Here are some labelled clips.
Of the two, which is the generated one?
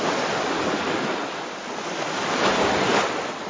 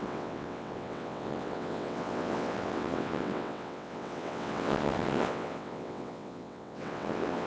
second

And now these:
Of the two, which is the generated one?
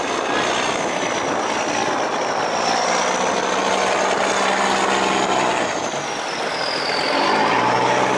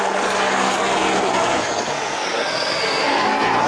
second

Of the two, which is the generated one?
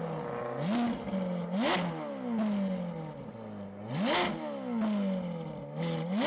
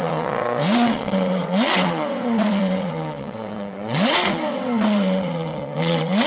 second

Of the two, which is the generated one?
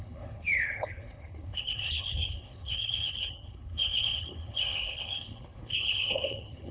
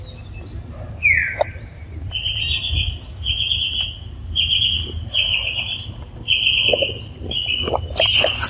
first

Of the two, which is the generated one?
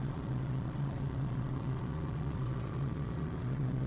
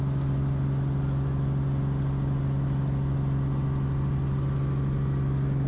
first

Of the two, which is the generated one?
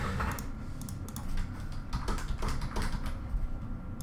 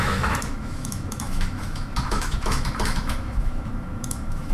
second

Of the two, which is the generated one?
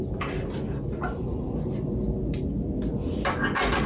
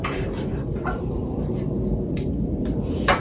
second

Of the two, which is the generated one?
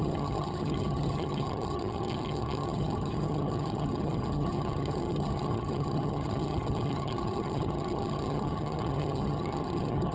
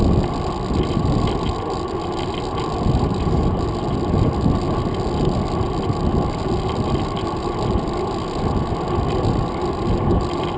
first